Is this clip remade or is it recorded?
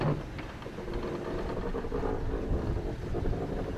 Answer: recorded